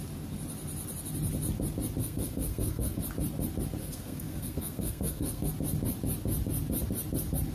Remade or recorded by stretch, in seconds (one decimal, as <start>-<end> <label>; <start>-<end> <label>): 0.0-2.0 recorded; 2.0-3.0 remade; 3.0-3.8 recorded; 3.8-5.5 remade; 5.5-7.5 recorded

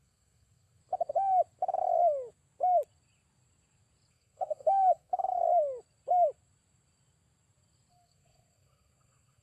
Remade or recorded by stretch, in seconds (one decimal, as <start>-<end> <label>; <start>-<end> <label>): 0.0-0.8 remade; 0.8-4.1 recorded; 4.1-5.4 remade; 5.4-7.9 recorded; 7.9-9.4 remade

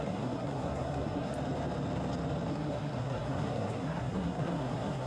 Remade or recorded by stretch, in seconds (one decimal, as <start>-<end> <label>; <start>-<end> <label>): 0.0-1.3 remade; 1.3-2.5 recorded; 2.5-5.1 remade

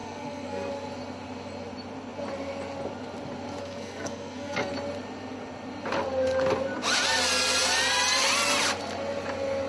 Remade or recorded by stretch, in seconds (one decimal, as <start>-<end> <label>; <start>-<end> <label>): 0.0-0.7 remade; 0.7-3.6 recorded; 3.6-4.7 remade; 4.7-9.7 recorded

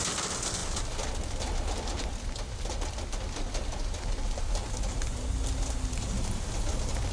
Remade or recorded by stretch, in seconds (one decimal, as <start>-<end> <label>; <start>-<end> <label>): 0.0-7.1 recorded